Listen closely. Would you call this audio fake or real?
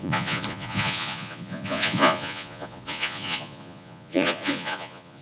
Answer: fake